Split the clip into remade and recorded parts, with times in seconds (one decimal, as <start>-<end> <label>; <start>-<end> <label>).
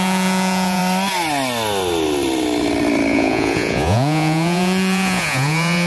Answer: 0.0-0.8 remade; 0.8-3.1 recorded; 3.1-5.9 remade